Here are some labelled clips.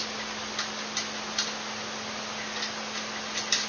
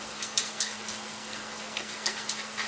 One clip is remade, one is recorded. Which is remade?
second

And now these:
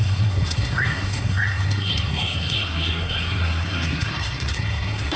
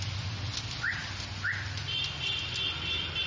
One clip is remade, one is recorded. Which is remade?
first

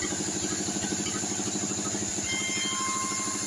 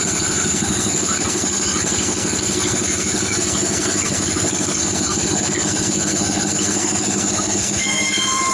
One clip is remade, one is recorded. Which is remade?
second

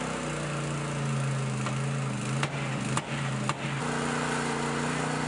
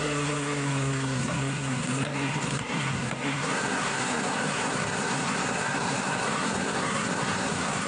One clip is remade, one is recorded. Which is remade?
second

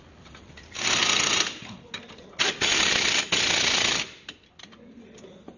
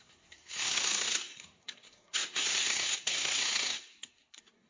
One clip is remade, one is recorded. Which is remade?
second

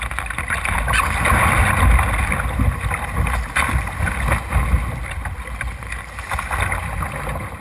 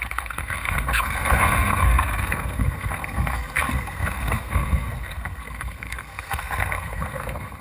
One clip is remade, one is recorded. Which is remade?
second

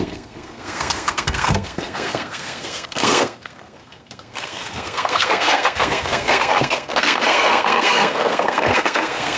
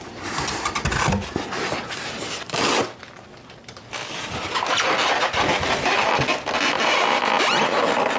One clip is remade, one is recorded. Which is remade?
first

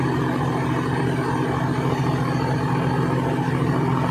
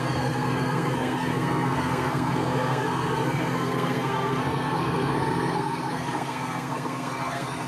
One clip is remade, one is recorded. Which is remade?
second